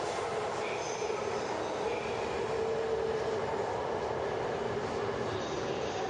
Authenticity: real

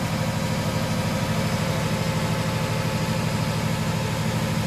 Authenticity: real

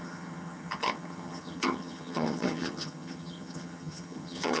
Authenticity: fake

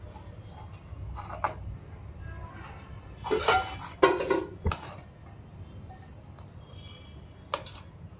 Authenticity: real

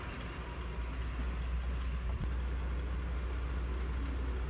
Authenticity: real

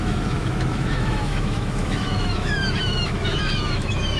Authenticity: fake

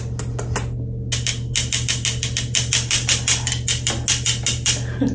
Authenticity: real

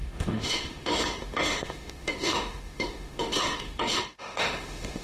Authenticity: fake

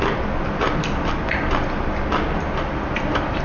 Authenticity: real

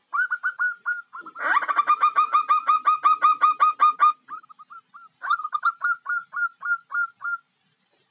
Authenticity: real